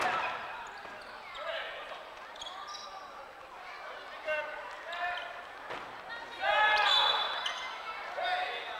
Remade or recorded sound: recorded